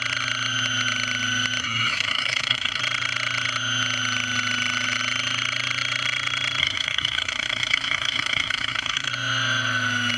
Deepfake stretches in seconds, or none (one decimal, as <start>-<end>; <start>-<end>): 1.6-2.8; 6.6-9.1